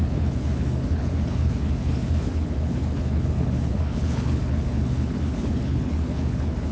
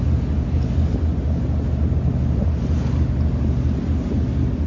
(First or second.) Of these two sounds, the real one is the second